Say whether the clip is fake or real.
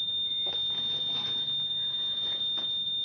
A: real